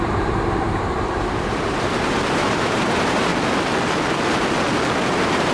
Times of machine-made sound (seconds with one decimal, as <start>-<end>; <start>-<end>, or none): 0.0-3.3; 5.0-5.5